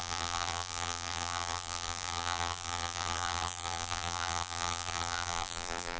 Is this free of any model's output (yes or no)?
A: no